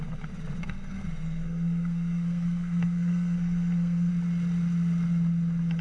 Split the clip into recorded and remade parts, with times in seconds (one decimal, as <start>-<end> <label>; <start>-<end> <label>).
0.0-0.6 recorded; 0.6-4.1 remade; 4.1-5.8 recorded